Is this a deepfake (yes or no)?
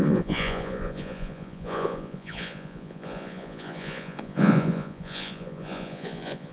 yes